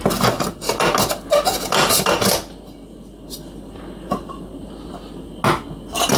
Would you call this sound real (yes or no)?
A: yes